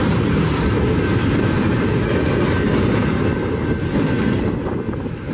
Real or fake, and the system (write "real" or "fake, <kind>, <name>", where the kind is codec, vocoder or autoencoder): fake, vocoder, BigVGAN v2